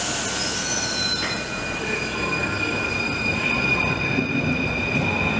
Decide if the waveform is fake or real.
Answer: real